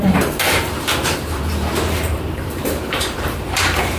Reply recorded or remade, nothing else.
remade